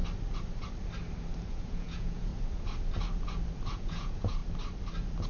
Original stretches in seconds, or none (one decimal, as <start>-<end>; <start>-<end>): 0.0-1.5; 2.3-3.7; 4.4-5.3